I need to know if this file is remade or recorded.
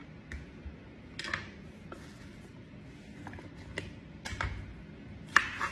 recorded